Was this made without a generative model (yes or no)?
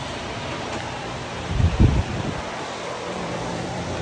no